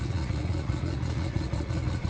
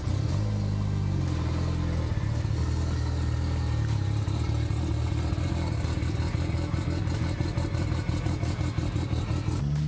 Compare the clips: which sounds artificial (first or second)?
first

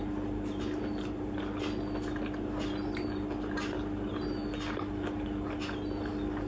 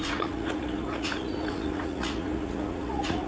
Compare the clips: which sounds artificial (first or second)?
second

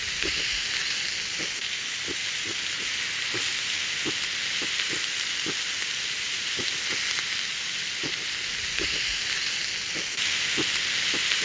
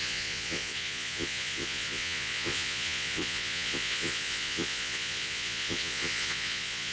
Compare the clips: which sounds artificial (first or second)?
second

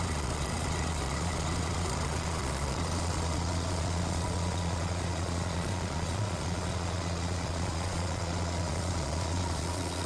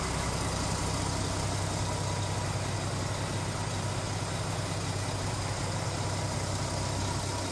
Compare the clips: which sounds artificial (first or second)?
first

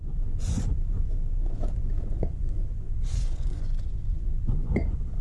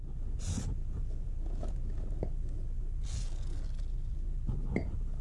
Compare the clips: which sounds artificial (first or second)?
first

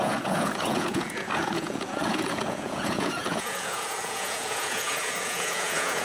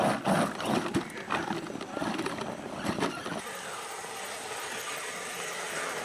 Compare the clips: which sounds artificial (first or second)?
first